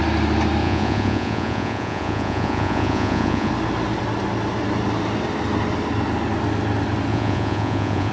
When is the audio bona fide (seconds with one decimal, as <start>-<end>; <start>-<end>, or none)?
0.0-0.6; 3.5-7.1